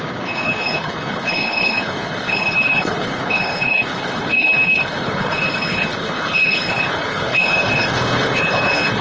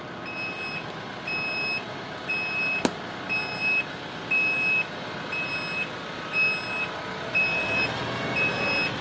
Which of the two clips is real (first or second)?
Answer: second